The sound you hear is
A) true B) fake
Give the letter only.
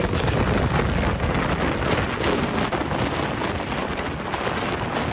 A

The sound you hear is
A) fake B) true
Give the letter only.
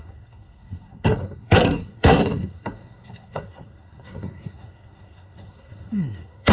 A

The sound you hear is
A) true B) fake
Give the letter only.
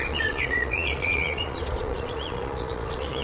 B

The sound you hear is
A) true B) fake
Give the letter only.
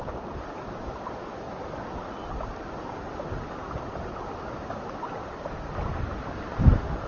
A